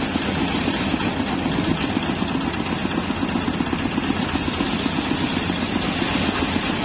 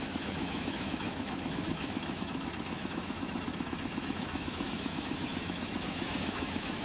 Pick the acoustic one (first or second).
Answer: first